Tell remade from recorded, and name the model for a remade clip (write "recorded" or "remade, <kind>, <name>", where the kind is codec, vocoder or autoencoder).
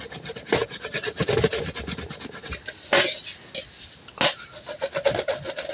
recorded